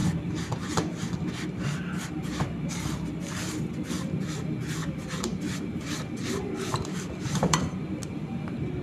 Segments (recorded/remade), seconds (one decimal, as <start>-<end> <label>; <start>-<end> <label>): 0.0-4.8 recorded; 4.8-8.8 remade